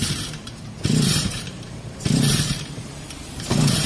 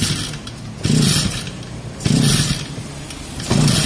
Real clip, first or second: second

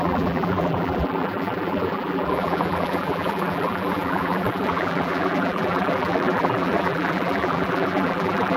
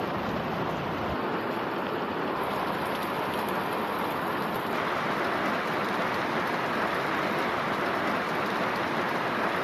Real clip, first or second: second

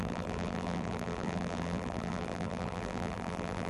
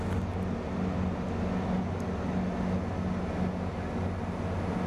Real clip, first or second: second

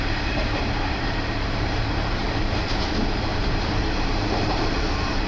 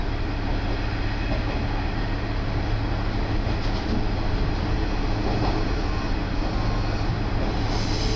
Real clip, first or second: second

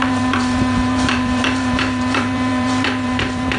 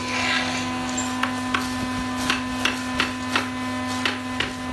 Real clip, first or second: second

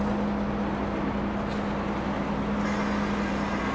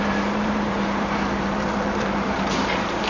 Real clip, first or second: first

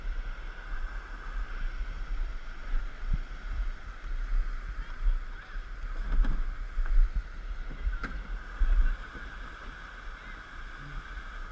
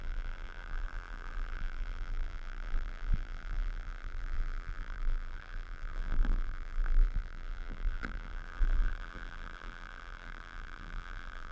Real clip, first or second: first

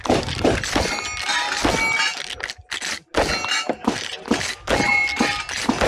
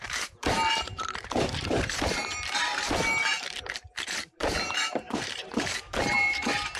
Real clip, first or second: first